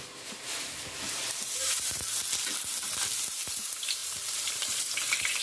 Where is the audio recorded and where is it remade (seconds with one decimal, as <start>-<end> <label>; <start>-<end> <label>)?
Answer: 0.0-1.4 remade; 1.4-3.2 recorded; 3.2-5.4 remade

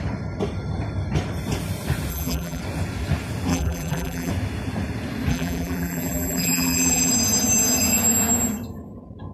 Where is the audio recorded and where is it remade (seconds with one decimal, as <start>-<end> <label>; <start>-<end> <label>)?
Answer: 0.0-2.1 recorded; 2.1-2.6 remade; 2.6-3.5 recorded; 3.5-4.3 remade; 4.3-5.3 recorded; 5.3-7.1 remade; 7.1-9.3 recorded

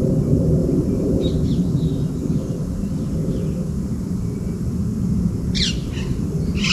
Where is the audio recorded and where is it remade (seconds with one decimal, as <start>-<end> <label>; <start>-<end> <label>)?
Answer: 0.0-0.6 recorded; 0.6-1.3 remade; 1.3-6.7 recorded

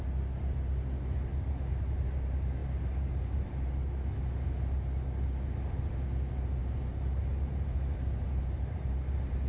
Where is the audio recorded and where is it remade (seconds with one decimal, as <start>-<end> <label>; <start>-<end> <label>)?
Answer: 0.0-2.6 recorded; 2.6-3.5 remade; 3.5-6.6 recorded; 6.6-9.5 remade

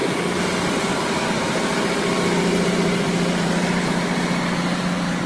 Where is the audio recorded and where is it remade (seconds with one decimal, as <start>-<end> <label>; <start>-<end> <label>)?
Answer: 0.0-0.7 recorded; 0.7-5.3 remade

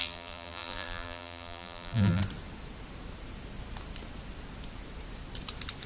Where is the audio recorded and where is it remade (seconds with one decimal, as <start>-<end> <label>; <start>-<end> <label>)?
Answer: 0.0-2.2 remade; 2.2-5.9 recorded

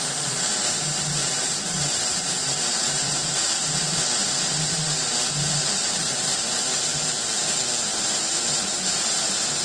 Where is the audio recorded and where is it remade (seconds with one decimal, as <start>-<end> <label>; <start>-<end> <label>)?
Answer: 0.0-6.9 remade; 6.9-8.0 recorded; 8.0-9.6 remade

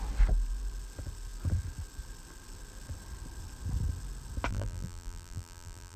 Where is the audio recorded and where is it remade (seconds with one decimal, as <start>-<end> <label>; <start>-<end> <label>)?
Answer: 0.0-4.5 recorded; 4.5-6.0 remade